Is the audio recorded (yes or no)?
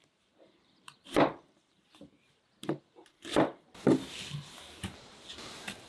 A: no